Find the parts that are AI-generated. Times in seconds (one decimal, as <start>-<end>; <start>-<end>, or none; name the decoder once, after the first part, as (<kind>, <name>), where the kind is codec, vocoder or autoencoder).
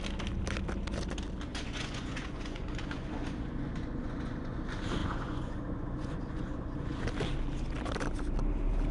1.5-4.6 (vocoder, Vocos); 5.0-7.0